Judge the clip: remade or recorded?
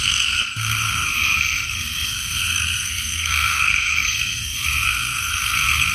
remade